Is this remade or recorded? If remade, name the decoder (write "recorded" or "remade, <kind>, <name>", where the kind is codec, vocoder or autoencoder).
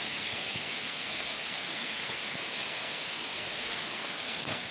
remade, codec, SNAC